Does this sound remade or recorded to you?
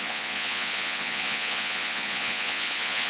remade